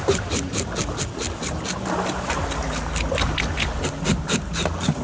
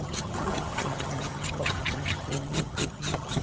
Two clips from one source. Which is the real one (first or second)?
first